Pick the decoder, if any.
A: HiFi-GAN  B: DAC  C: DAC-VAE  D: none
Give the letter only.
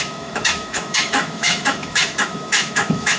C